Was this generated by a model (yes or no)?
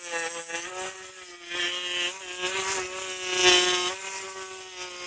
no